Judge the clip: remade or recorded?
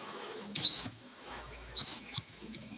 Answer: remade